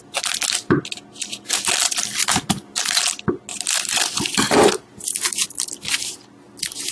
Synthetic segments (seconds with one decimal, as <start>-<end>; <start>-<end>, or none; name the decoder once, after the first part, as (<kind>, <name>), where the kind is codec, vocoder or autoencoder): 2.2-2.8 (vocoder, BigVGAN v2); 3.5-6.1